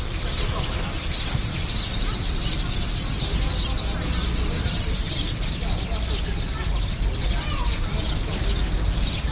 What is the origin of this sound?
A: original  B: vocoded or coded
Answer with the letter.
A